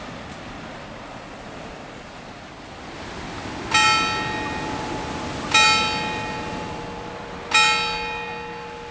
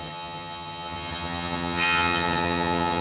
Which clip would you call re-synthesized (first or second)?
second